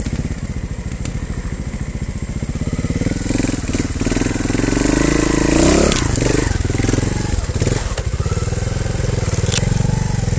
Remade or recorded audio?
recorded